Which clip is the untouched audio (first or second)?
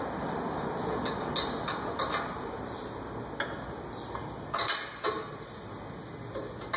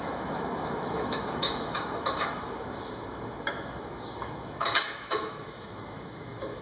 first